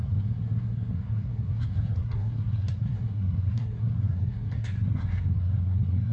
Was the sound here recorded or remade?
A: remade